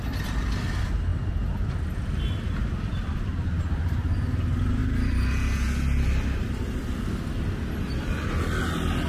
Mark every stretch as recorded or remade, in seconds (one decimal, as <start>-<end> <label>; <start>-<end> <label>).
0.0-9.1 recorded